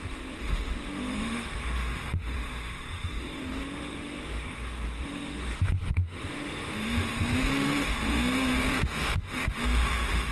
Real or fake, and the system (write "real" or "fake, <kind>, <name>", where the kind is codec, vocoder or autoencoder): fake, autoencoder, DAC-VAE